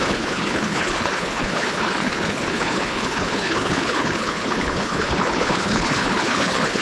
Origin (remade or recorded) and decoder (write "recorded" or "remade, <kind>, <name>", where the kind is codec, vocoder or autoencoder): remade, codec, HILCodec